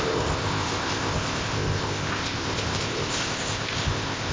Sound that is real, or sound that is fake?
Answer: fake